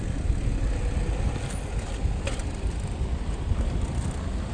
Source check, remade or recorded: recorded